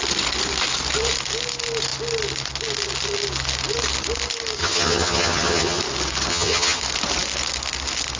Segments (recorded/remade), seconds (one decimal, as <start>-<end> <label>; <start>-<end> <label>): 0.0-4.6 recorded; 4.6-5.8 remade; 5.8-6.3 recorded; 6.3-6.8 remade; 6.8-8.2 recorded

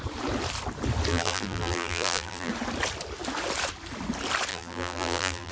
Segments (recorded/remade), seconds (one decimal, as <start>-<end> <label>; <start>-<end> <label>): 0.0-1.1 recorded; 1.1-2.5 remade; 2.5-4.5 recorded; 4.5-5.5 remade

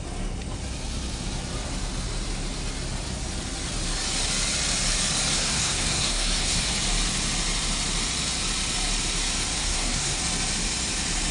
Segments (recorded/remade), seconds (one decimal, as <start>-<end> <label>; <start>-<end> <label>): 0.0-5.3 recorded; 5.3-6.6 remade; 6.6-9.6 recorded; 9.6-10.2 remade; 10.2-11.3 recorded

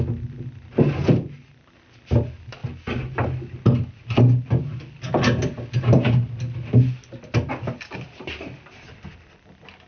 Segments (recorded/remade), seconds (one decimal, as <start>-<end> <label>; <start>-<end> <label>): 0.0-9.9 recorded

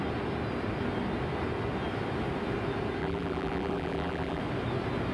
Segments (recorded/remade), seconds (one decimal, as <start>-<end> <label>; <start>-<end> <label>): 0.0-3.0 recorded; 3.0-4.4 remade; 4.4-5.1 recorded

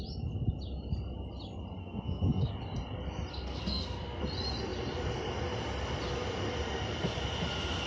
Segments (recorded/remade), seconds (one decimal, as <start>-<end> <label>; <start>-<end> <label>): 0.0-1.8 recorded; 1.8-2.5 remade; 2.5-3.3 recorded; 3.3-4.2 remade; 4.2-7.9 recorded

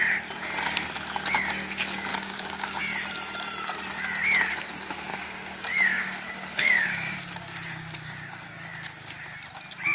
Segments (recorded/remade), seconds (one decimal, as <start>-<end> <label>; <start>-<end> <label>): 0.0-2.1 recorded; 2.1-2.8 remade; 2.8-5.1 recorded; 5.1-9.2 remade; 9.2-9.9 recorded

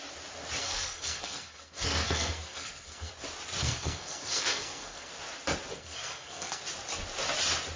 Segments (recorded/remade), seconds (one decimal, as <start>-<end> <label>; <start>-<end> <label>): 0.0-0.6 recorded; 0.6-3.1 remade; 3.1-3.6 recorded; 3.6-5.1 remade; 5.1-5.7 recorded; 5.7-6.6 remade; 6.6-7.8 recorded